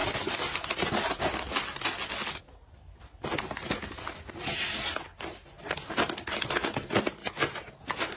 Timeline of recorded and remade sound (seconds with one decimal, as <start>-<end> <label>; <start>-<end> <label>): 0.0-8.2 recorded